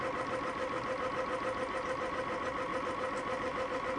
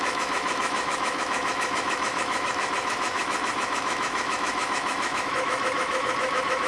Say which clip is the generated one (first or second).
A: second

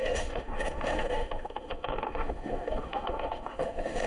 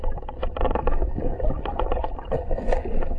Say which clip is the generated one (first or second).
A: first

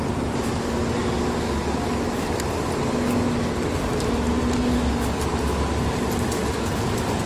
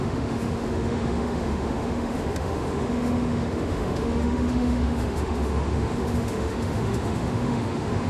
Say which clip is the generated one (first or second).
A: second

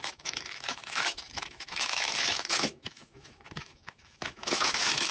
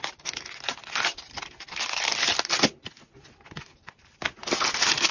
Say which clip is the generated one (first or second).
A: first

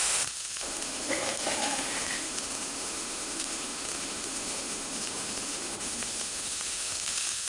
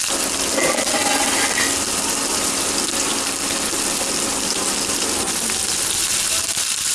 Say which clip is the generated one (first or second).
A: first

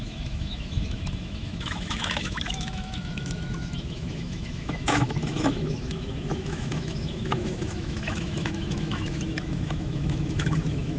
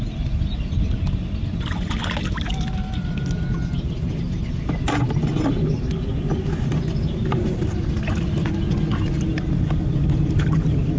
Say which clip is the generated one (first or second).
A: first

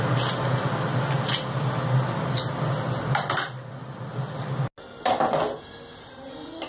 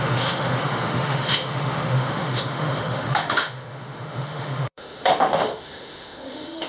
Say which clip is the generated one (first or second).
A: second